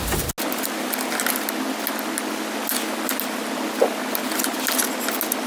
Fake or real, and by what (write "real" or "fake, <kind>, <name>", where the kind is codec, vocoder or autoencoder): real